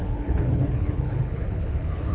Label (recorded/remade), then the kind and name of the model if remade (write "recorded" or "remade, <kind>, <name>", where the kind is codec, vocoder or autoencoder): remade, codec, HILCodec